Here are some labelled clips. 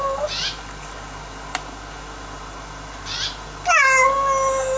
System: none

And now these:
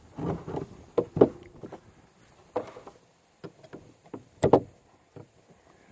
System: none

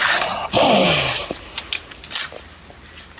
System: none